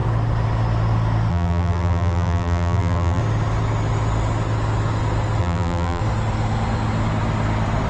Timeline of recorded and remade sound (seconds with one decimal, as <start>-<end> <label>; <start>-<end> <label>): 0.0-1.3 recorded; 1.3-3.2 remade; 3.2-5.4 recorded; 5.4-6.0 remade; 6.0-7.9 recorded